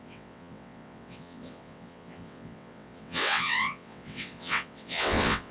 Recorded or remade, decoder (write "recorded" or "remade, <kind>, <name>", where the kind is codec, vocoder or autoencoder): remade, vocoder, WaveNeXt